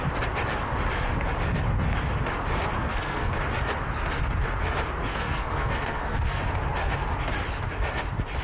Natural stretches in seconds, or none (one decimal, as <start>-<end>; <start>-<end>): 0.0-2.8; 3.3-5.1; 6.4-8.4